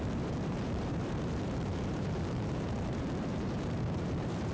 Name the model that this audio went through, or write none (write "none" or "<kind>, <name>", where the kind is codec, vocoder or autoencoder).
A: vocoder, BigVGAN v2